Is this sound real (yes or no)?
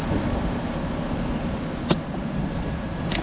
yes